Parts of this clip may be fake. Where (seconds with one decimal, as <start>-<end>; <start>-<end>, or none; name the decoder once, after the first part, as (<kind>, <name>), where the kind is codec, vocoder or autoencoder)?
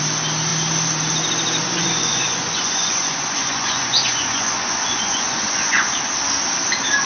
1.6-5.9 (vocoder, Vocos)